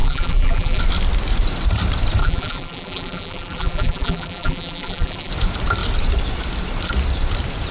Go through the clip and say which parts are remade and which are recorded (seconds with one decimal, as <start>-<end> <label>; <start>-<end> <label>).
0.0-0.8 remade; 0.8-2.2 recorded; 2.2-5.3 remade; 5.3-7.7 recorded